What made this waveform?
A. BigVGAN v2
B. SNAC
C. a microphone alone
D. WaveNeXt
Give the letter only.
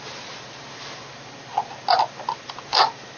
C